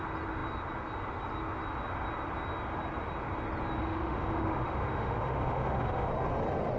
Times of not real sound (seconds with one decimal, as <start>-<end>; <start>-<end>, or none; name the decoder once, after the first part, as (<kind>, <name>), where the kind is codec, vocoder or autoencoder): 3.8-6.1 (autoencoder, DAC-VAE)

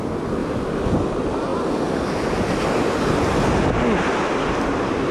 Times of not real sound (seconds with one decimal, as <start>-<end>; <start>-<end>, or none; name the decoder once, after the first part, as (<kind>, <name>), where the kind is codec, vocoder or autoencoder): none

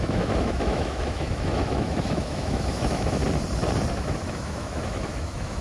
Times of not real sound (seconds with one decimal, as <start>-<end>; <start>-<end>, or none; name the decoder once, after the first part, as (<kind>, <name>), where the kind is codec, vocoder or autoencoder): 0.0-3.2 (autoencoder, DAC-VAE); 3.9-5.6

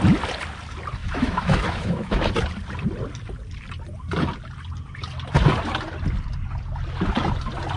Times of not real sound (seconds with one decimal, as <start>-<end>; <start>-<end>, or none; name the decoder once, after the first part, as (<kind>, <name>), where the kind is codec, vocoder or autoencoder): 1.0-2.3 (autoencoder, DAC-VAE)

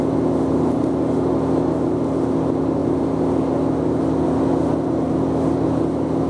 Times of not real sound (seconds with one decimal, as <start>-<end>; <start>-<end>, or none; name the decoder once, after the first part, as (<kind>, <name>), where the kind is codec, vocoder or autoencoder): none

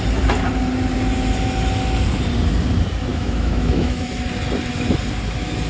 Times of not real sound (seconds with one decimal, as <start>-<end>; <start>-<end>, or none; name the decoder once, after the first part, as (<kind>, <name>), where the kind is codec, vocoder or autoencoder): 3.1-4.1 (autoencoder, DAC-VAE)